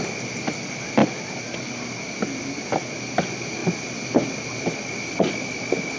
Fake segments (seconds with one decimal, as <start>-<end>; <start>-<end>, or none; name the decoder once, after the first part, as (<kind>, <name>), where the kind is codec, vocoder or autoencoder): none